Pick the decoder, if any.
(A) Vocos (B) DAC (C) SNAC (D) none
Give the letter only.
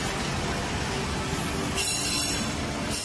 D